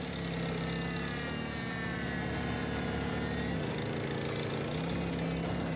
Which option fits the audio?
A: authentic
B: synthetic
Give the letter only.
A